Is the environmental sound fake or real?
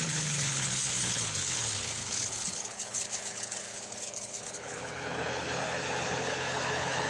fake